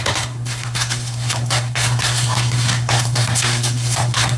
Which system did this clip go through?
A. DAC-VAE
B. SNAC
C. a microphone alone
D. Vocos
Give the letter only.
B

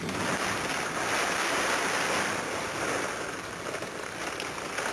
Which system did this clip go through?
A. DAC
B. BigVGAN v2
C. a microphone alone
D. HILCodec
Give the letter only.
C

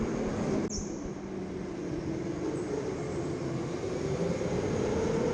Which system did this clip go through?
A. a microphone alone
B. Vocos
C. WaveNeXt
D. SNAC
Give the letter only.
A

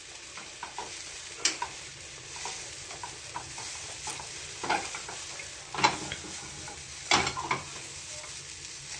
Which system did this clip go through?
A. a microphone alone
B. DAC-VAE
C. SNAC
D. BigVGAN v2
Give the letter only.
A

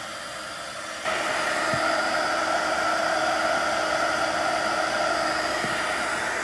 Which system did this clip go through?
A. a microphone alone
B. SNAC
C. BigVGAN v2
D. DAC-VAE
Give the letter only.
A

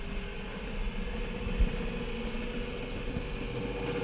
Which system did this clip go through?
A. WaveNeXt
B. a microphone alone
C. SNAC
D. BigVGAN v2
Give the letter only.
B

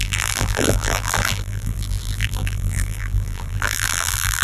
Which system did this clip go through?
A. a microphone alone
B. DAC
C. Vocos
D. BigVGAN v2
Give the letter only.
D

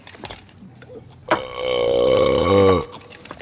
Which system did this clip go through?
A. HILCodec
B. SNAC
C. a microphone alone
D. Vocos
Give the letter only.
C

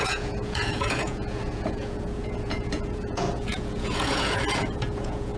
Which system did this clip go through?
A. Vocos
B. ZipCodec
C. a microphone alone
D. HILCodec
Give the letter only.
A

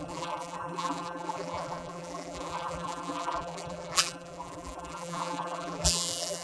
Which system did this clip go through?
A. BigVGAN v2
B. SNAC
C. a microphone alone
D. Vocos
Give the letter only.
A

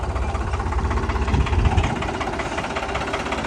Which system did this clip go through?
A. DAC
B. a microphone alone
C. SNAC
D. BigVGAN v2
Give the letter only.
B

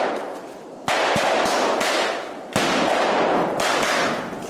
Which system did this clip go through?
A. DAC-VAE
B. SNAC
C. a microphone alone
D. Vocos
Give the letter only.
C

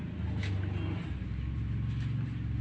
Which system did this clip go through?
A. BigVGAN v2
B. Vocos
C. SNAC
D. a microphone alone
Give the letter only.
D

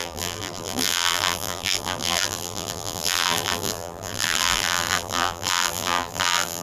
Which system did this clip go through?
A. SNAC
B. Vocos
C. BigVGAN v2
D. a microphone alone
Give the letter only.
C